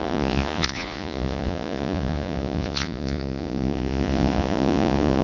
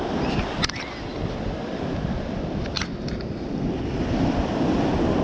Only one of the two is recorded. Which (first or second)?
second